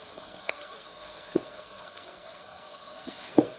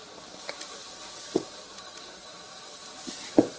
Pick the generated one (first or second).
first